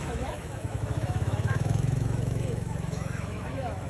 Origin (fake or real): fake